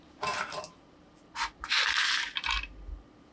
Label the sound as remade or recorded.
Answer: remade